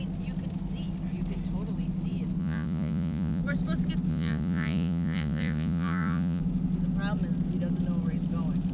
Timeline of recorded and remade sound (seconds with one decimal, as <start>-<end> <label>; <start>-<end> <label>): 0.0-2.4 recorded; 2.4-3.4 remade; 3.4-4.1 recorded; 4.1-6.4 remade; 6.4-8.7 recorded